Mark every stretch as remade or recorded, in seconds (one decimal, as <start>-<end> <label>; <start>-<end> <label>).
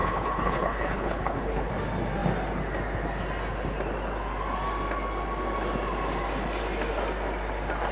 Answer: 0.0-1.7 remade; 1.7-7.9 recorded